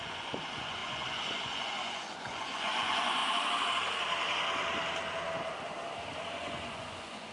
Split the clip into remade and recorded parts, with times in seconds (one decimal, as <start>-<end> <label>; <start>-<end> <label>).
0.0-3.2 remade; 3.2-6.2 recorded; 6.2-7.3 remade